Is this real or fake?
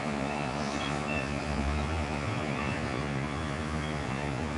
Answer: fake